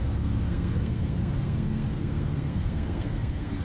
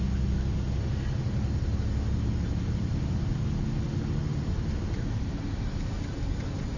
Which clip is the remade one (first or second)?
first